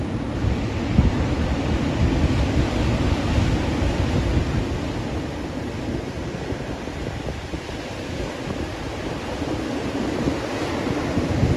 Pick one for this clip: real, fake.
real